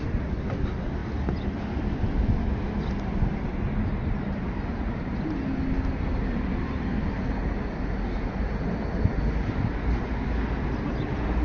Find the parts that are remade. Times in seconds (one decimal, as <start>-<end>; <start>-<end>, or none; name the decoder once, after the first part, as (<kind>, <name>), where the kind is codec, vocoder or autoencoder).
none